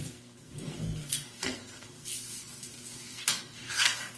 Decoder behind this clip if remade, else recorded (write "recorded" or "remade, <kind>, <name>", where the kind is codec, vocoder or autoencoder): remade, codec, SNAC